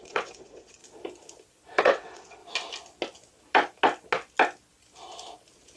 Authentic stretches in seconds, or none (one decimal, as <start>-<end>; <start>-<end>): 0.8-1.8; 2.4-5.8